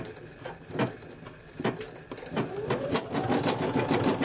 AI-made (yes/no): no